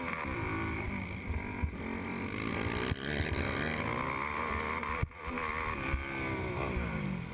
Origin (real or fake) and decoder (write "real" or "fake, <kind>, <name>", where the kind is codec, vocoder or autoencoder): real